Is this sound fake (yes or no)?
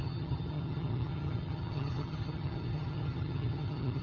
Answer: yes